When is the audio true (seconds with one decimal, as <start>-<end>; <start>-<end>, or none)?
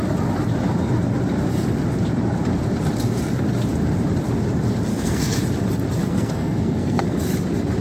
0.0-4.9; 5.4-6.0; 7.2-7.8